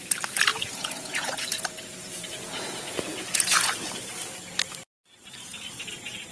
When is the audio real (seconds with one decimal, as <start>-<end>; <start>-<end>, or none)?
0.0-0.5; 3.9-6.3